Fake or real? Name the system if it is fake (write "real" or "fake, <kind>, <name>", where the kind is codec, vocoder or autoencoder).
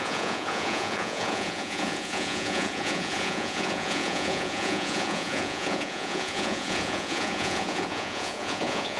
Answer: fake, vocoder, Vocos